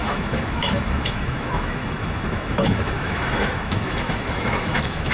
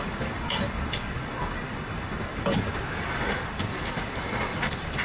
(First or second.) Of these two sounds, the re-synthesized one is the first